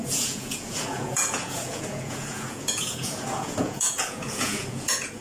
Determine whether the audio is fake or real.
fake